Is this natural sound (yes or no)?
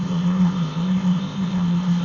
no